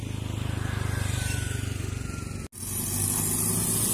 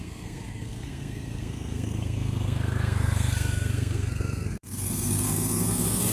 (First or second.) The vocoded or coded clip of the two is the second